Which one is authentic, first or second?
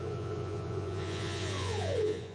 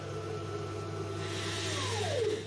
second